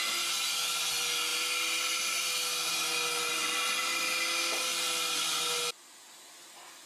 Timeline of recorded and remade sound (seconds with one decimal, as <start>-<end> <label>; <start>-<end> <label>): 0.0-6.9 recorded